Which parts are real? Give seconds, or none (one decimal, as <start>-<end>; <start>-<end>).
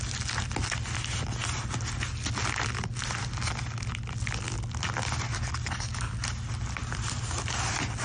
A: 0.0-6.8; 7.4-8.0